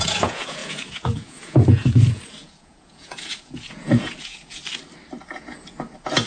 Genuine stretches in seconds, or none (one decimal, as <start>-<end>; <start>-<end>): 4.6-5.2